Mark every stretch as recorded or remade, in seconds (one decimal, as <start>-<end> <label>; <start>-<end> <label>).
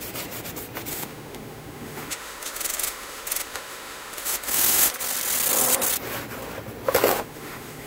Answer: 0.0-0.9 recorded; 0.9-4.9 remade; 4.9-7.1 recorded; 7.1-7.9 remade